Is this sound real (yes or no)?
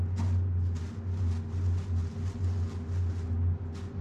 yes